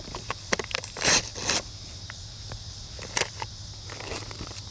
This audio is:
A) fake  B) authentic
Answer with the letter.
A